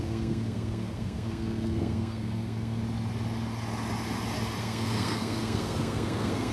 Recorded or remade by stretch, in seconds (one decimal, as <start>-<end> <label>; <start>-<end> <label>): 0.0-2.8 remade; 2.8-4.6 recorded; 4.6-6.5 remade